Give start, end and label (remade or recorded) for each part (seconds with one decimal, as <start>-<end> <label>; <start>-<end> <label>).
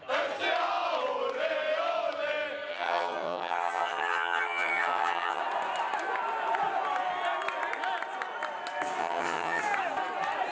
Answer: 0.0-2.7 recorded; 2.7-5.4 remade; 5.4-9.0 recorded; 9.0-9.6 remade; 9.6-10.5 recorded